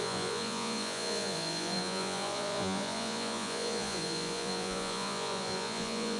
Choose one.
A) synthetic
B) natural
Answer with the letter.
A